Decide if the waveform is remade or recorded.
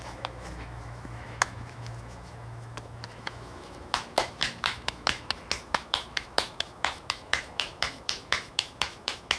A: remade